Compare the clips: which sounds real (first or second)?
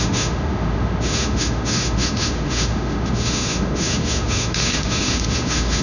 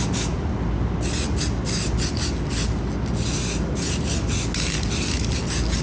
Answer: second